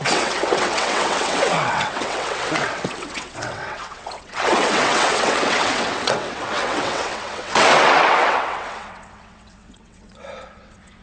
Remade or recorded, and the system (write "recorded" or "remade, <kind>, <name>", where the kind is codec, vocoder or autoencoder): remade, vocoder, WaveNeXt